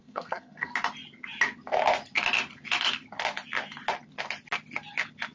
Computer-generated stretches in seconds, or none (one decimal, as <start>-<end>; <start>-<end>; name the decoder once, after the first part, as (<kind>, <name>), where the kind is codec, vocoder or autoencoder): 0.0-0.7 (codec, SNAC)